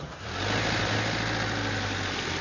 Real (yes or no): yes